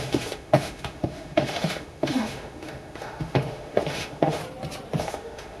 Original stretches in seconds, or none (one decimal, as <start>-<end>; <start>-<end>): 4.4-5.0